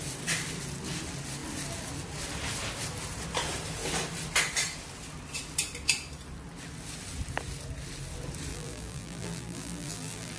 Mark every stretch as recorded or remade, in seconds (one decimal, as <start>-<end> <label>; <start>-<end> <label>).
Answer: 0.0-8.5 recorded; 8.5-10.4 remade